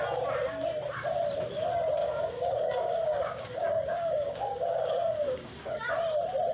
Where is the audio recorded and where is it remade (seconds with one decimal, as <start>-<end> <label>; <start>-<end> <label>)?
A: 0.0-2.0 recorded; 2.0-5.9 remade; 5.9-6.5 recorded